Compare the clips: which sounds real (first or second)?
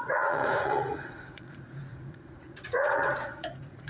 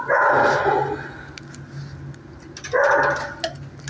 second